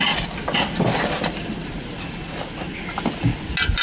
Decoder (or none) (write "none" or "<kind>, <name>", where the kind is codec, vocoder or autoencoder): none